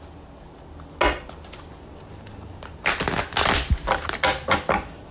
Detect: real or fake real